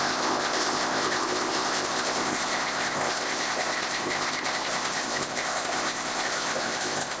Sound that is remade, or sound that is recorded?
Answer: remade